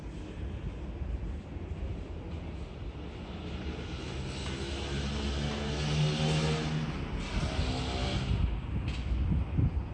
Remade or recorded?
recorded